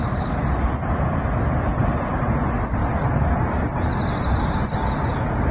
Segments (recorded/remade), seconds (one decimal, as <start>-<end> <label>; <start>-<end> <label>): 0.0-1.7 recorded; 1.7-2.4 remade; 2.4-2.8 recorded; 2.8-3.8 remade; 3.8-5.5 recorded